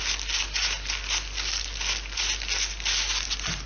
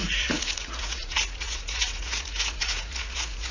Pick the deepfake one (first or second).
second